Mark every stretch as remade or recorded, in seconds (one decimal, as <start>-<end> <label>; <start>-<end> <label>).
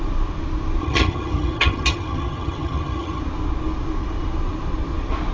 0.0-0.8 recorded; 0.8-3.2 remade; 3.2-5.3 recorded